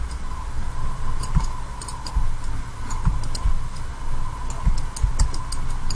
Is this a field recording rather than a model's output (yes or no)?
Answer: yes